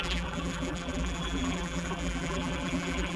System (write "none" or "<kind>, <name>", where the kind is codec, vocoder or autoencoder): vocoder, BigVGAN v2